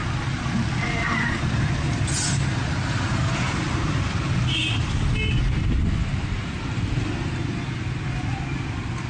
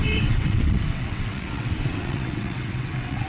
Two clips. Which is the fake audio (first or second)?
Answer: second